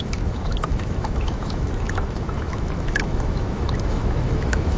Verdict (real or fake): fake